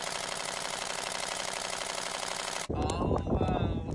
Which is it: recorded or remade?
recorded